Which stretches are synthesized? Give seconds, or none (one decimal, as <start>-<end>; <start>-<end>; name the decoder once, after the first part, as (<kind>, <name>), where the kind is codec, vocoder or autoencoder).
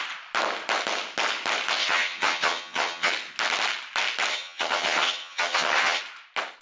1.8-3.1 (vocoder, HiFi-GAN); 4.3-6.0